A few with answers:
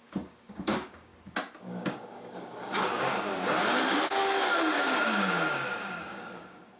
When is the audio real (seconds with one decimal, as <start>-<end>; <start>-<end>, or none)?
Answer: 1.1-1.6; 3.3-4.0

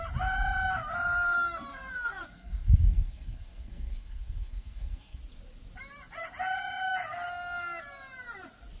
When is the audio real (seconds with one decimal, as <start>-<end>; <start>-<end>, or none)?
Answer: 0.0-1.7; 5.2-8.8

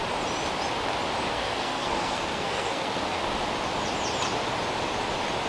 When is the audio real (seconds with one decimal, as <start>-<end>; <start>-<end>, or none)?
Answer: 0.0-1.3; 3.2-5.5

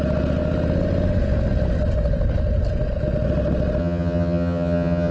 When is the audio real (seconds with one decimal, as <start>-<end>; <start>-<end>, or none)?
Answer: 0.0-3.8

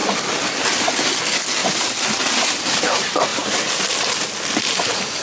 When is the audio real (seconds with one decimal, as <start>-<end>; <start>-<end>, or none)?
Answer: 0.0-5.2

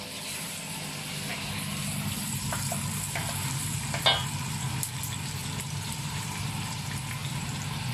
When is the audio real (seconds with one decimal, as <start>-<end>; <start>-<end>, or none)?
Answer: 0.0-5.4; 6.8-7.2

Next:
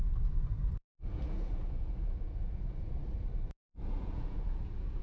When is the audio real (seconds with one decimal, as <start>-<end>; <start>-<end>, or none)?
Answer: 0.0-0.9; 2.9-3.7

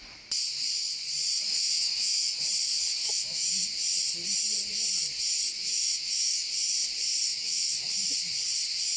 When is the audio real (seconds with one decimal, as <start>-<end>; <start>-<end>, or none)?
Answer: 0.0-1.5; 2.4-3.0; 3.5-5.6; 6.5-7.3; 7.9-9.0